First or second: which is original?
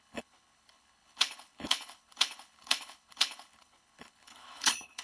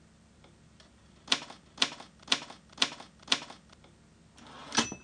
second